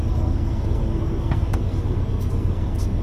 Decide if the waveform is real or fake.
fake